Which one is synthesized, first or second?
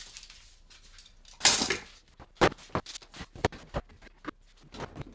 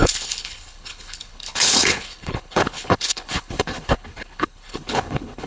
second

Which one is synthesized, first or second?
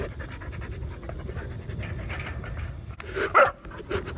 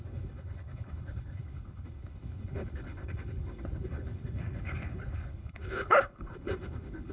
second